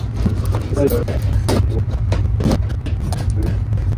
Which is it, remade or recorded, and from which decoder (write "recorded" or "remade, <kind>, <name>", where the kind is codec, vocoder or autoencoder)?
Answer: recorded